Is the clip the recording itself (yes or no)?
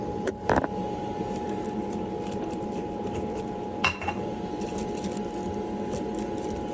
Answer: yes